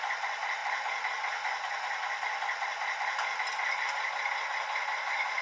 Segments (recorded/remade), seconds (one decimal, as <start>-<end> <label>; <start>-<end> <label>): 0.0-5.4 recorded